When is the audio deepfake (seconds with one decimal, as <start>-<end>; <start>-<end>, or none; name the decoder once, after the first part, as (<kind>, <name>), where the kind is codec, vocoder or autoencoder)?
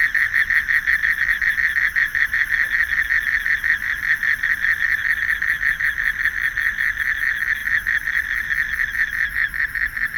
none